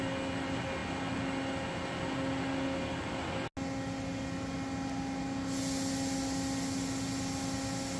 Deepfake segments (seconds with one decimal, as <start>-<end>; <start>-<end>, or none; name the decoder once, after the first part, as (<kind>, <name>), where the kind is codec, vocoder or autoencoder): none